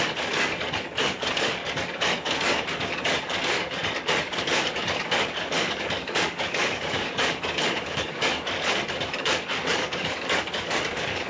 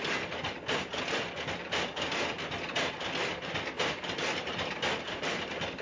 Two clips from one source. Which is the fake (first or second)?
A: first